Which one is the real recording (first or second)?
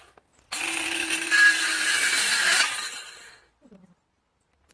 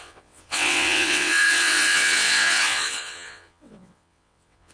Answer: first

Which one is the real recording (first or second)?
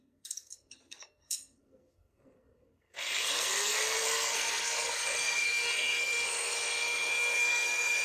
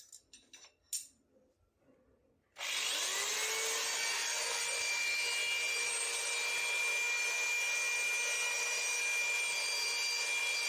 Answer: second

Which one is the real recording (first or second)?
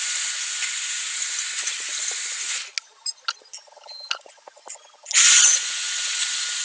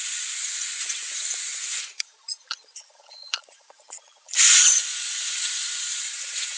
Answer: first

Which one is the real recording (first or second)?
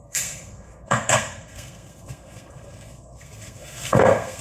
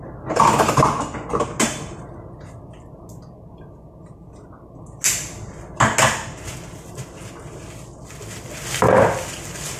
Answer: second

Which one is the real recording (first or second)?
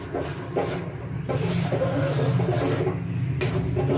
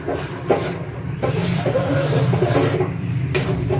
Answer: first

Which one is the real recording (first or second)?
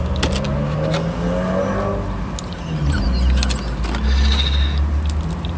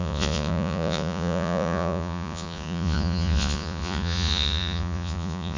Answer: first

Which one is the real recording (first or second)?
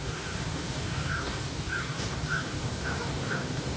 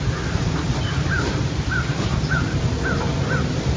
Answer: second